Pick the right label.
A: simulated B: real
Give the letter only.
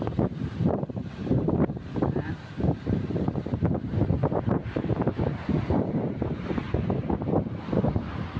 A